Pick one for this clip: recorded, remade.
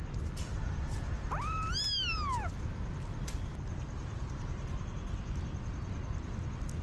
recorded